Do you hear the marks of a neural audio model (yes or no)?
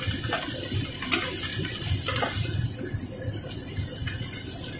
no